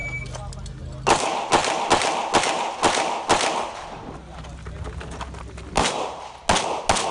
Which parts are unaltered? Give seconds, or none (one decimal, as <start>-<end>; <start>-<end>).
0.0-7.1